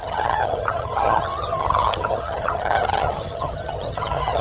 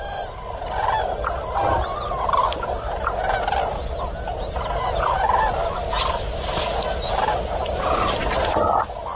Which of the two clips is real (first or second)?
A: second